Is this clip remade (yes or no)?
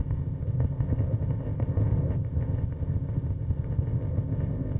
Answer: yes